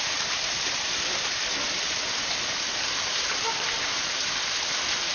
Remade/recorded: recorded